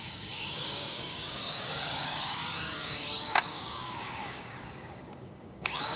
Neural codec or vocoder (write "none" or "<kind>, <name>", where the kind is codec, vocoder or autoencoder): codec, DAC